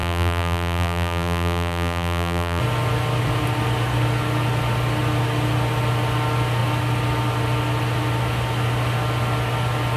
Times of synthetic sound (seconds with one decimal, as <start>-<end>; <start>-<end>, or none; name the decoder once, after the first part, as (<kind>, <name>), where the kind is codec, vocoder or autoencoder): 0.0-2.6 (vocoder, BigVGAN v2)